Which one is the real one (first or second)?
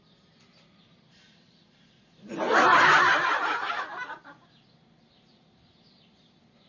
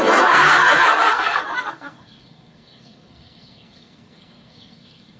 first